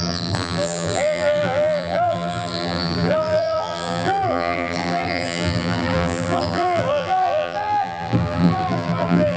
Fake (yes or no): yes